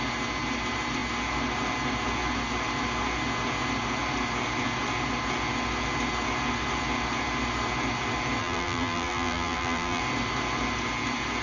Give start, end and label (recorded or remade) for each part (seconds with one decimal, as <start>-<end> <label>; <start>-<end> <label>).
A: 0.0-8.4 recorded; 8.4-10.0 remade; 10.0-11.4 recorded